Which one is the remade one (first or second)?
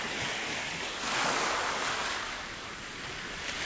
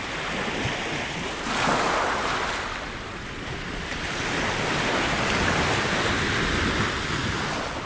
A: first